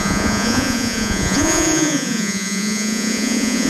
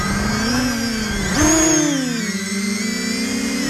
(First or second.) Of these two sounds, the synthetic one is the first